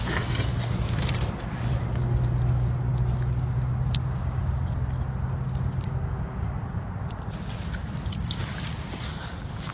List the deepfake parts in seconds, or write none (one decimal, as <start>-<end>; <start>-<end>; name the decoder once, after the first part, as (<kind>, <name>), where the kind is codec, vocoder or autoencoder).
none